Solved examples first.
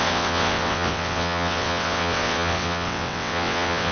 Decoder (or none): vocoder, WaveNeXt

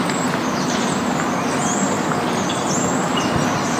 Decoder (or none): none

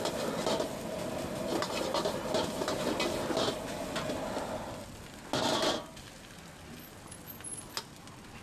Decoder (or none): none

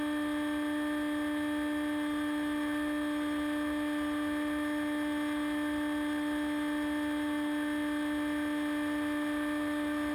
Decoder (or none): none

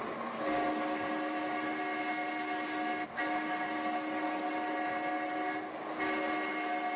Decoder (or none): none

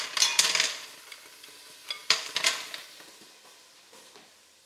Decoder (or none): vocoder, BigVGAN v2